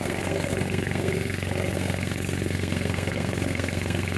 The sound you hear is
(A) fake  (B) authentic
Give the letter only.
A